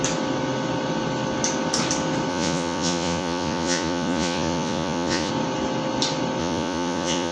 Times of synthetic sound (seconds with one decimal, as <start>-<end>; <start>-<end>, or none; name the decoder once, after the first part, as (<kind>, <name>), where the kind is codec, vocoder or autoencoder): 2.3-5.3 (vocoder, Vocos); 6.4-7.3